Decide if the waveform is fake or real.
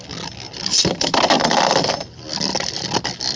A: real